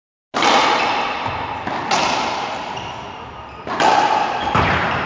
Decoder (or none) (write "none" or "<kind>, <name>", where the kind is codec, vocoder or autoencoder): none